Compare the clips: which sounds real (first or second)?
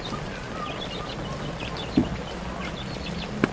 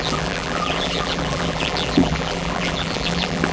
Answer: first